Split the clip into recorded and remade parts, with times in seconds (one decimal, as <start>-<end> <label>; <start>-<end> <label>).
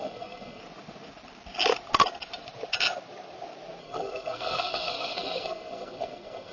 0.0-0.6 remade; 0.6-3.8 recorded; 3.8-6.5 remade